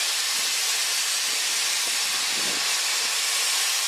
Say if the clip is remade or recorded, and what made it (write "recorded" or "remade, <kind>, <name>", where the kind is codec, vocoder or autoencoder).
recorded